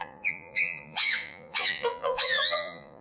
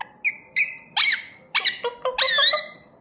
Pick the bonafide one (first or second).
second